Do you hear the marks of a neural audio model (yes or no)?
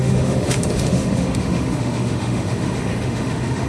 yes